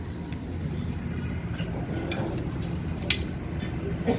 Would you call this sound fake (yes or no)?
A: no